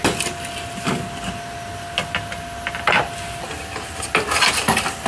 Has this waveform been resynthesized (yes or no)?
no